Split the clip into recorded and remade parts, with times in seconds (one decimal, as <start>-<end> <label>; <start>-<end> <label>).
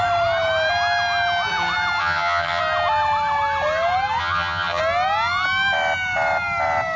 0.0-2.0 recorded; 2.0-2.6 remade; 2.6-4.2 recorded; 4.2-4.8 remade; 4.8-7.0 recorded